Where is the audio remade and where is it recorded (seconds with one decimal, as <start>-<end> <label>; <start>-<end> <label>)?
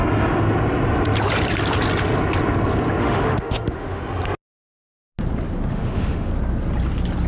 0.0-3.0 recorded; 3.0-4.0 remade; 4.0-5.7 recorded; 5.7-6.3 remade; 6.3-7.3 recorded